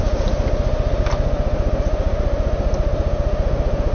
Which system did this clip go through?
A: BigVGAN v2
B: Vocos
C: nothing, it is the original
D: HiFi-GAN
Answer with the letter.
C